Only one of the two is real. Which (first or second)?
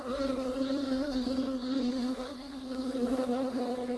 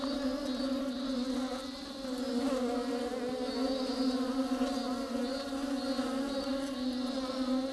second